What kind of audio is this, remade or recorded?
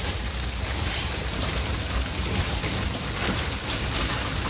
recorded